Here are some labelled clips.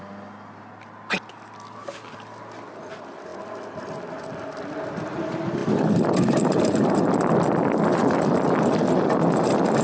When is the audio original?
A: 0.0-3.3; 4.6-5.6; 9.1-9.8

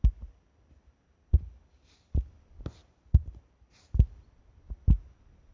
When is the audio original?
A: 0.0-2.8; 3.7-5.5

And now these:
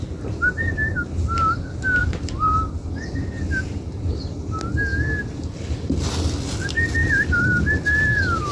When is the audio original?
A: 0.0-2.0; 4.4-7.0